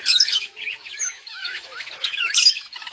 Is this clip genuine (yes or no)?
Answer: no